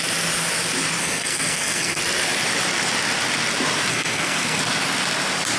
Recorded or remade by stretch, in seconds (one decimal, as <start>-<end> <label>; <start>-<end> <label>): 0.0-1.0 recorded; 1.0-2.0 remade; 2.0-3.9 recorded; 3.9-4.6 remade; 4.6-5.6 recorded